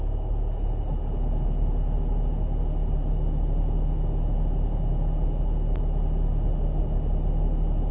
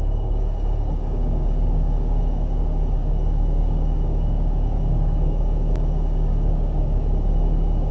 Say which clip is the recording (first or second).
first